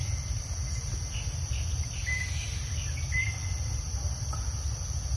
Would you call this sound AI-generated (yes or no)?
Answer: no